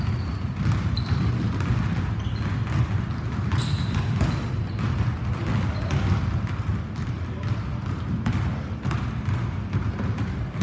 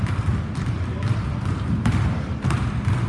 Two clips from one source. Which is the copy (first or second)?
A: second